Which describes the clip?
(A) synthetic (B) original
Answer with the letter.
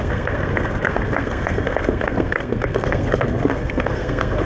A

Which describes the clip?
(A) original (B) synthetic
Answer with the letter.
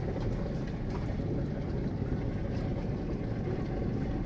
A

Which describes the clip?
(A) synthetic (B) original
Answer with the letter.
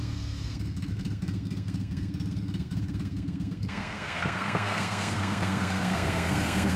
A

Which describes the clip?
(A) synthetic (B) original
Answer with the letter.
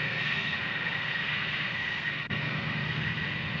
A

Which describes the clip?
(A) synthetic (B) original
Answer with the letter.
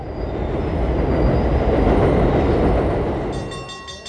B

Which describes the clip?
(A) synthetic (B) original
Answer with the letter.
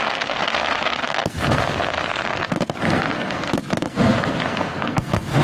A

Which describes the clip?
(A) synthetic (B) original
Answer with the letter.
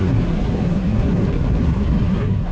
A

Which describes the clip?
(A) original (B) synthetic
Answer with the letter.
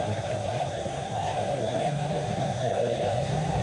B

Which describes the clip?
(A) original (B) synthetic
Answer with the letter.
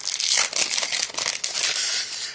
A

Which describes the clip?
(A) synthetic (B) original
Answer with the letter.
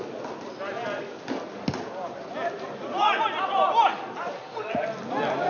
B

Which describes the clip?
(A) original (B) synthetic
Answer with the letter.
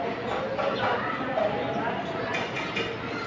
A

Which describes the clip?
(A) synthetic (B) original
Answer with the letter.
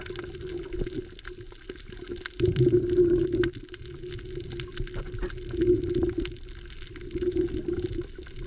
B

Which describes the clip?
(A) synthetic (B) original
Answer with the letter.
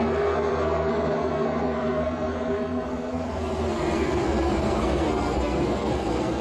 A